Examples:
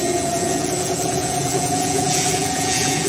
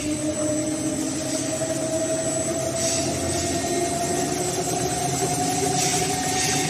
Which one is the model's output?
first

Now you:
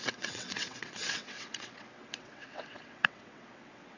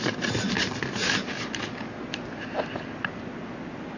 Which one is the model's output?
first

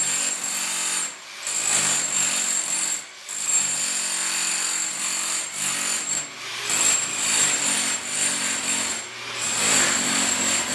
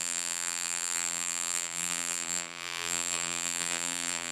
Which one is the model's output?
second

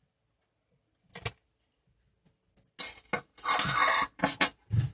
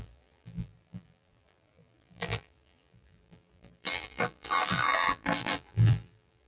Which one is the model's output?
second